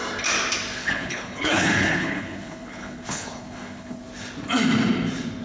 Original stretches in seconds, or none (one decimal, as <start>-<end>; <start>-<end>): 0.0-0.8; 4.0-5.4